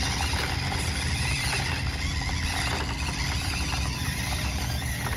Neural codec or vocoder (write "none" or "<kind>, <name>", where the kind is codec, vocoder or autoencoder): none